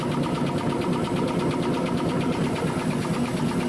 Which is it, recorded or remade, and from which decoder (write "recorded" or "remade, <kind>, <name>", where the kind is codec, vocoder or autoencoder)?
recorded